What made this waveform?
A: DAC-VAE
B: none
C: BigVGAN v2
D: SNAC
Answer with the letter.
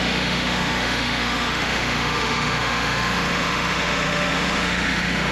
A